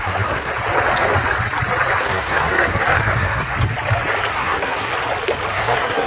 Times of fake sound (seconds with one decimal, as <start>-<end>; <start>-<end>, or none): 0.0-0.5; 2.0-3.5; 4.3-4.9; 5.5-6.1